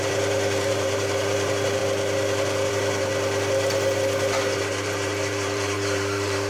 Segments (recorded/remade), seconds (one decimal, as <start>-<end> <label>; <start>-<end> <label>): 0.0-1.8 remade; 1.8-2.7 recorded; 2.7-3.1 remade; 3.1-4.6 recorded; 4.6-6.5 remade